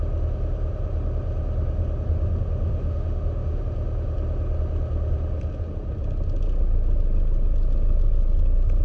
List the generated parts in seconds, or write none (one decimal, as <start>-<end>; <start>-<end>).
2.7-3.6